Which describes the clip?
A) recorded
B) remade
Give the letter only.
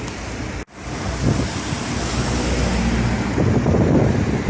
A